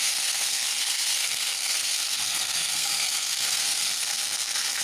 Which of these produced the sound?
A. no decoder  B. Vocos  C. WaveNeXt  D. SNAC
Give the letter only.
D